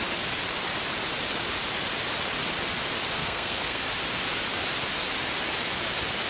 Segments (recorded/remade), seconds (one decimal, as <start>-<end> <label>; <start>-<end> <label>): 0.0-3.2 recorded; 3.2-3.8 remade; 3.8-6.3 recorded